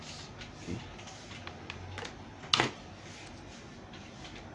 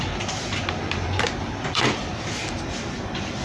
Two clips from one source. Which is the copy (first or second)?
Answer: second